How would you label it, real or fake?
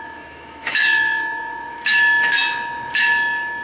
fake